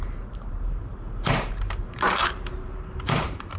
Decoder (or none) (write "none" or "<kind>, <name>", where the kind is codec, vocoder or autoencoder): vocoder, BigVGAN v2